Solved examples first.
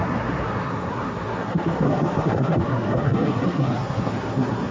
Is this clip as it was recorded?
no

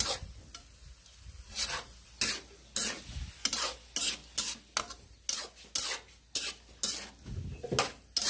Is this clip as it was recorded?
yes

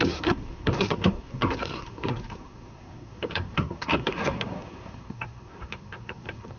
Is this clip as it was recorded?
no